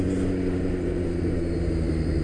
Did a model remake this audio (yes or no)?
no